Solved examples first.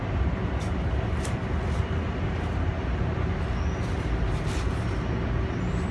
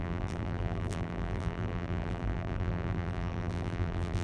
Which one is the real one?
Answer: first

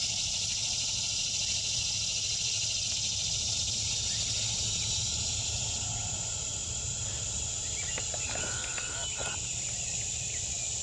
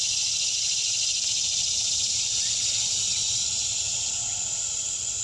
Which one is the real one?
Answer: first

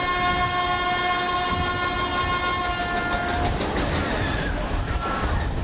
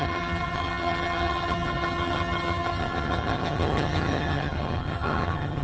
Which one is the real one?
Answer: first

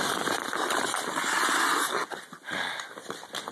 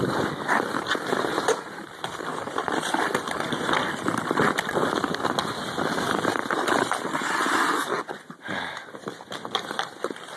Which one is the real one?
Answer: first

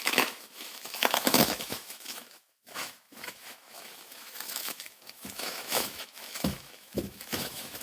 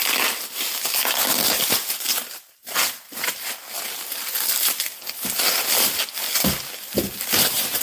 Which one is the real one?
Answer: second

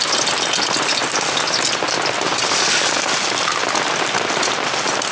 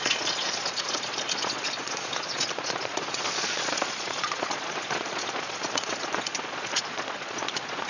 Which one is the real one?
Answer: first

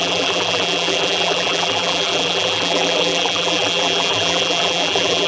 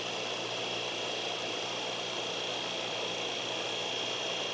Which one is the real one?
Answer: second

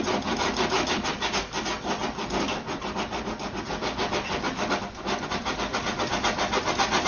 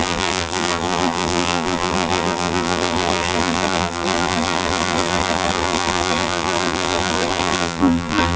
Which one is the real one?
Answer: first